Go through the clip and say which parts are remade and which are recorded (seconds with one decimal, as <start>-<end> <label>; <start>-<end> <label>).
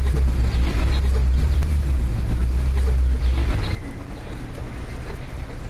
0.0-5.7 recorded